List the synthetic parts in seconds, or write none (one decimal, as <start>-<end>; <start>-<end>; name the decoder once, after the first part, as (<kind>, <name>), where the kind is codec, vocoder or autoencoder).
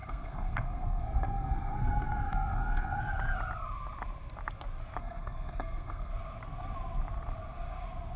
0.0-3.0 (codec, SNAC); 5.0-6.1